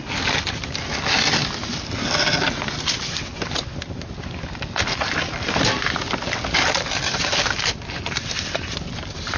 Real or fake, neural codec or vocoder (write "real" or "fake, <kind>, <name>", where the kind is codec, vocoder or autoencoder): real